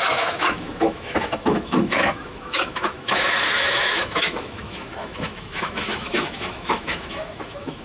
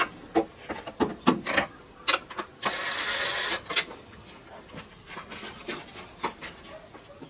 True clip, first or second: second